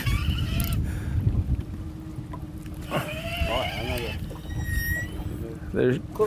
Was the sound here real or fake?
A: real